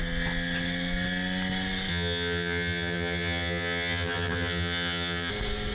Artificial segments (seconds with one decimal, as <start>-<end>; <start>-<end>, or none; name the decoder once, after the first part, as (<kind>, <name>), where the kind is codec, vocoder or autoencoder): 1.9-5.3 (vocoder, HiFi-GAN)